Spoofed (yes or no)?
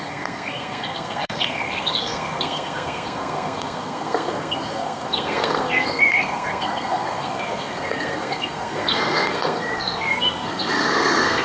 yes